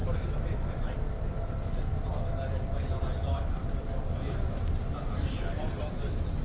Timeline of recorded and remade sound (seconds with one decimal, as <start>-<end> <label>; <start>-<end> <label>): 0.0-6.4 recorded